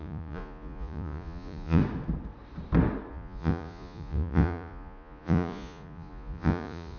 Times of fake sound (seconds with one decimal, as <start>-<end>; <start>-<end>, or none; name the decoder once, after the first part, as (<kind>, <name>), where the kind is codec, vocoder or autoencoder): 0.0-1.8 (vocoder, Vocos); 3.1-7.0